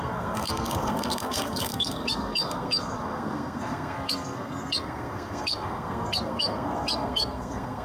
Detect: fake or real fake